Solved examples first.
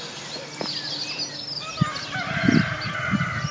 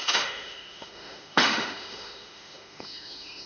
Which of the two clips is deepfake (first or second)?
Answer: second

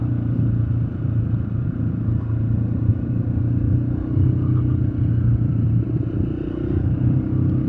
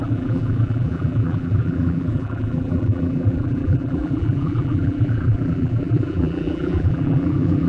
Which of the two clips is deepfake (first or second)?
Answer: second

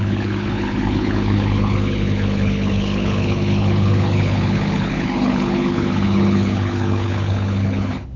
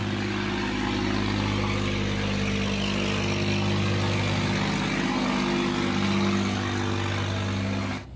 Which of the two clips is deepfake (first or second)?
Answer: first